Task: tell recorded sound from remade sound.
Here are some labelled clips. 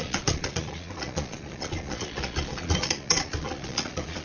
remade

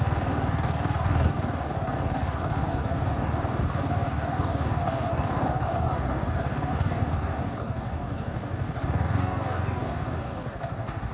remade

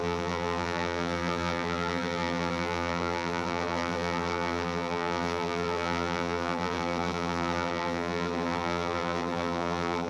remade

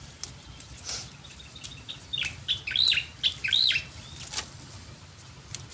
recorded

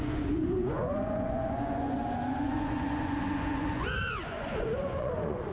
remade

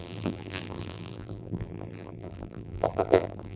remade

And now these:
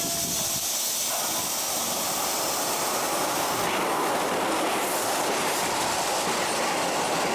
recorded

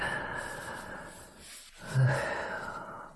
recorded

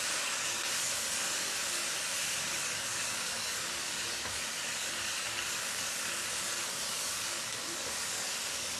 remade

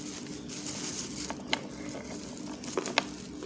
recorded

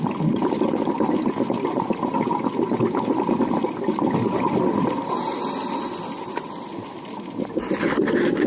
recorded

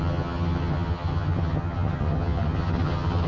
remade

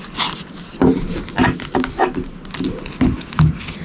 recorded